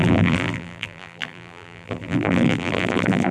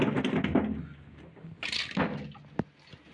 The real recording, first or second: second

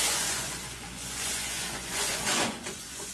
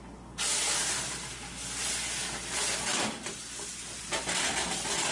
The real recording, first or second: second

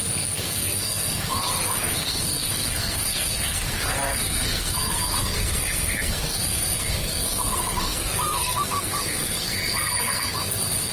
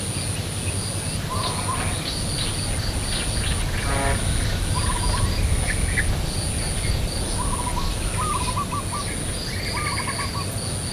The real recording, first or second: second